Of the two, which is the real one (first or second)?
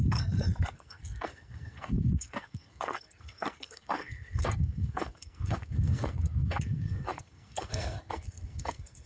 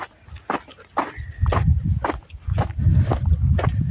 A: second